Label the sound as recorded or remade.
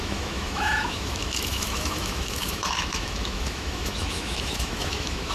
remade